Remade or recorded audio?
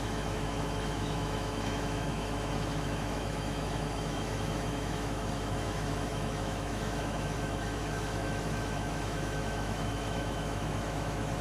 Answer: remade